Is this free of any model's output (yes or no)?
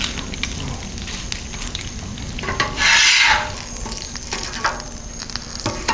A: yes